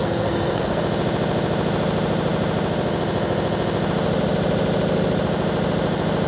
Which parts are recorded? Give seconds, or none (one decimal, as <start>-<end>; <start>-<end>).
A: 0.8-6.3